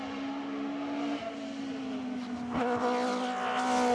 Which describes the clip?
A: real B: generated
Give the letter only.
A